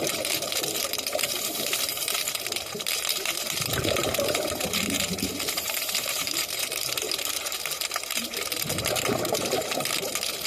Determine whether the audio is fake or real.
fake